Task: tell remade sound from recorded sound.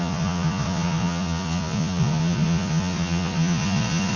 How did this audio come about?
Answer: remade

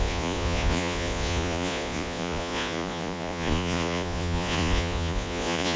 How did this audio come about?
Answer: remade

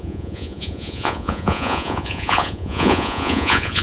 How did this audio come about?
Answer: remade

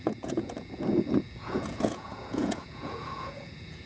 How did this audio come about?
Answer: remade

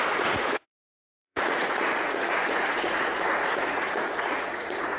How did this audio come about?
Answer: remade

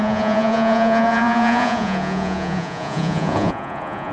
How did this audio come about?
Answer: remade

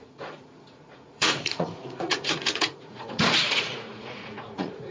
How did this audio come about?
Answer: remade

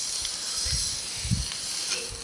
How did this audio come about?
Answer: recorded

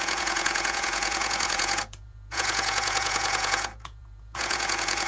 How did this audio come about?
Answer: remade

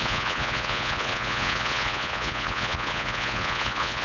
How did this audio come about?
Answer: remade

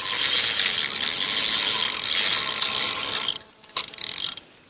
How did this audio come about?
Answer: recorded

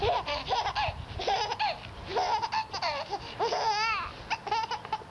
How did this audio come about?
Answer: recorded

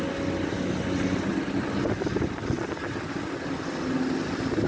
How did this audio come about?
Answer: recorded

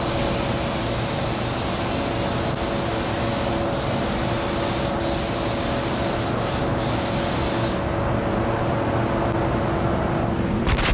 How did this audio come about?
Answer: recorded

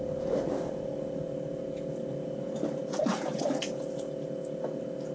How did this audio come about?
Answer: recorded